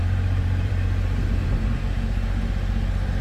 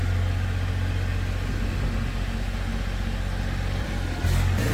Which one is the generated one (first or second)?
first